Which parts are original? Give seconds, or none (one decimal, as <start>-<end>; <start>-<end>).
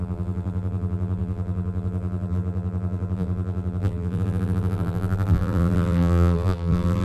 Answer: none